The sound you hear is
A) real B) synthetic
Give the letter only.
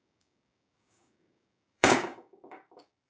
B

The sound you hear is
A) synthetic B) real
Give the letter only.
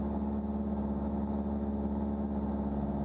B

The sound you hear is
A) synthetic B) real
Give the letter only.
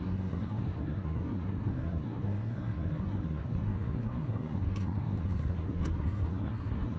A